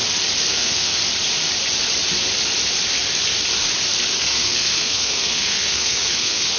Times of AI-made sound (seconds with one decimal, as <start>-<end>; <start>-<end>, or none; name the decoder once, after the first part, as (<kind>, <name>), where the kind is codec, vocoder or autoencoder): 0.5-1.0 (codec, SNAC); 4.2-6.6